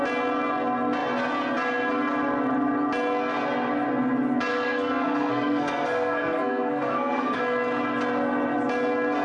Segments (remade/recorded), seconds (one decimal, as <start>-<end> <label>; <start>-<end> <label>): 0.0-4.5 recorded; 4.5-7.4 remade; 7.4-9.2 recorded